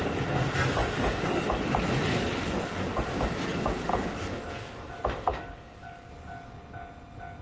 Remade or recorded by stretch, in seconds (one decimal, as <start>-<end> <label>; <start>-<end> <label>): 0.0-0.8 recorded; 0.8-1.4 remade; 1.4-3.9 recorded; 3.9-4.4 remade; 4.4-5.3 recorded; 5.3-6.1 remade; 6.1-7.4 recorded